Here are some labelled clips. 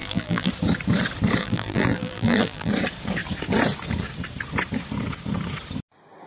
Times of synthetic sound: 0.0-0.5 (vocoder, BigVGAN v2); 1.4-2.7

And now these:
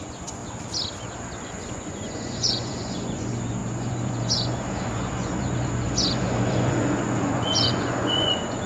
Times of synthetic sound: 0.0-0.4 (vocoder, Vocos); 1.4-8.7